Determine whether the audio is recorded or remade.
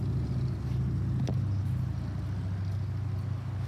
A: recorded